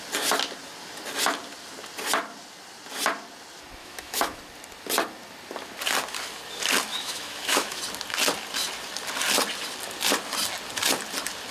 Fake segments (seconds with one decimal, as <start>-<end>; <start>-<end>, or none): 3.8-4.4; 6.9-7.8